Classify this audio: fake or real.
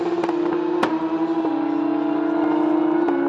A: real